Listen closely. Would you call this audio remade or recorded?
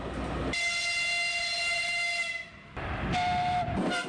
recorded